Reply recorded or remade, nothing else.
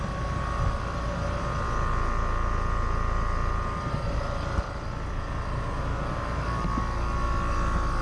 recorded